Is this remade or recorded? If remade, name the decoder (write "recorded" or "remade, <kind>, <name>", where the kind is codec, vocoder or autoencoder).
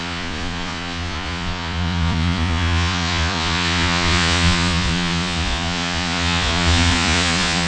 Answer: remade, vocoder, Vocos